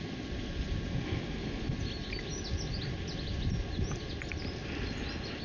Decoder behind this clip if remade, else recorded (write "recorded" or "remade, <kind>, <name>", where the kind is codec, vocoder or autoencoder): recorded